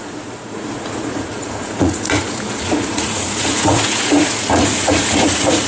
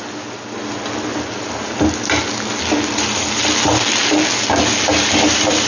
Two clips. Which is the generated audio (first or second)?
first